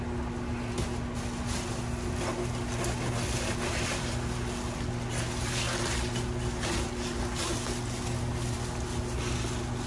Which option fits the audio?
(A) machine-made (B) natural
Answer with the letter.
B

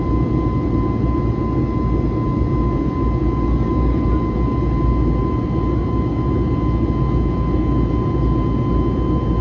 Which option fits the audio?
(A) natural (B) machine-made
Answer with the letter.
A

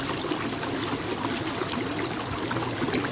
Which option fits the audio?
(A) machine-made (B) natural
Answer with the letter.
B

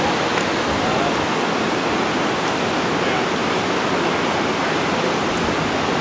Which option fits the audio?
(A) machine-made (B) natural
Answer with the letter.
B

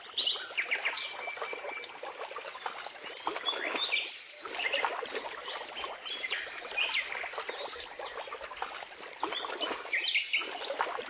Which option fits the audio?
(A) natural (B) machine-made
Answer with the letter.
A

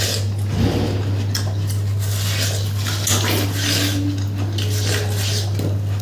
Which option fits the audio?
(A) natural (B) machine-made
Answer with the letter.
A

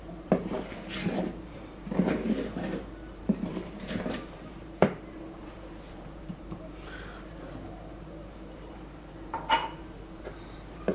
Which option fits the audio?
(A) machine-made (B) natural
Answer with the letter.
A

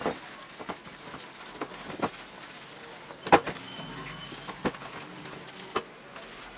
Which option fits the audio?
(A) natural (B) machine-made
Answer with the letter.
A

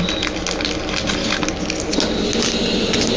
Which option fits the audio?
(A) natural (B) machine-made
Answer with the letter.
A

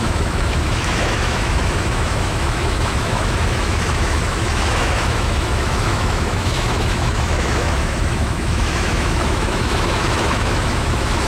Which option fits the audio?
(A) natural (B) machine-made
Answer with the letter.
B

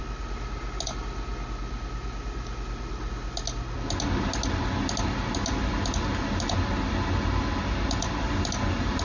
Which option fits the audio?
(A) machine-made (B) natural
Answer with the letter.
B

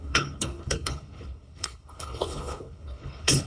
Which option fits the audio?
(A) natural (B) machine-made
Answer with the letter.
B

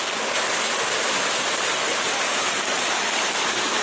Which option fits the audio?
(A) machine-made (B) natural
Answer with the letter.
B